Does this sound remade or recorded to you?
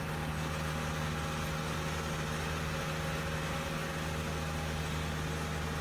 recorded